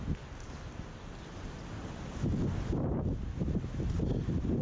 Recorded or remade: recorded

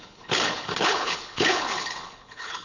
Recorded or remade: remade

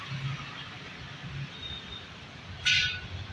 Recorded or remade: recorded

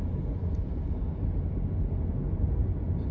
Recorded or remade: recorded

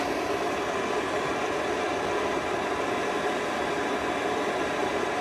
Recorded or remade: recorded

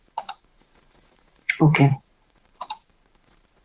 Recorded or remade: remade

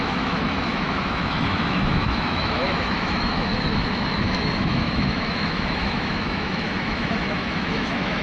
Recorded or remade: remade